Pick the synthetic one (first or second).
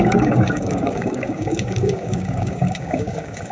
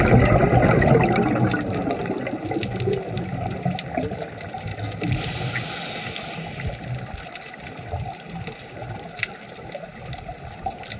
first